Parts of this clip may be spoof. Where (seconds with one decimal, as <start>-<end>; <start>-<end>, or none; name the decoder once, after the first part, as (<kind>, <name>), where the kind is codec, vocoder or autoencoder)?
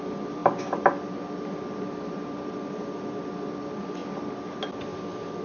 none